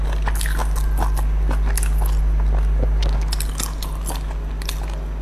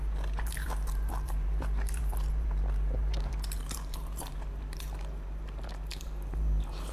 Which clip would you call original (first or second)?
first